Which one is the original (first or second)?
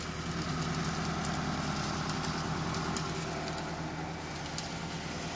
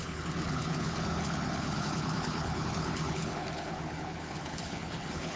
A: first